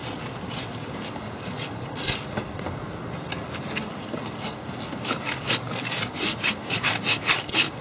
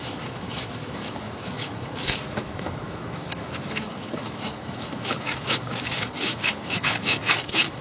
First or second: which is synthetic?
second